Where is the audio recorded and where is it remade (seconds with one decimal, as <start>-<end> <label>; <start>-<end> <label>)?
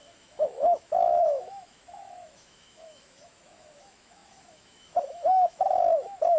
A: 0.0-6.4 remade